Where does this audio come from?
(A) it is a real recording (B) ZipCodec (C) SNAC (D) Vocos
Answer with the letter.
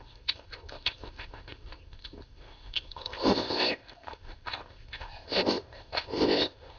B